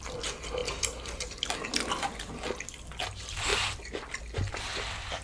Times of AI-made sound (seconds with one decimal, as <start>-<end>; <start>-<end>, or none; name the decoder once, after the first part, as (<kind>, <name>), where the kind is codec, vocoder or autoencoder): none